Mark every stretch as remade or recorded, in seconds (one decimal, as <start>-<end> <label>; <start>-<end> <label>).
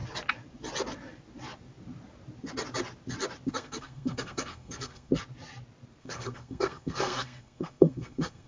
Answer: 0.0-3.5 recorded; 3.5-5.1 remade; 5.1-6.0 recorded; 6.0-8.5 remade